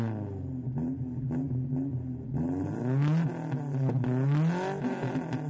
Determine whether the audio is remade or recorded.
recorded